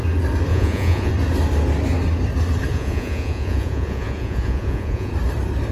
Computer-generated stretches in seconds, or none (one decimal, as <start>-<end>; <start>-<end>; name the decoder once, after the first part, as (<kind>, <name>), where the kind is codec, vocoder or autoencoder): 0.5-1.1 (vocoder, Vocos); 2.7-5.1